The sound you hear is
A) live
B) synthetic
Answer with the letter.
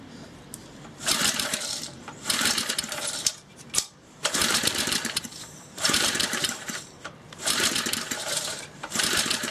B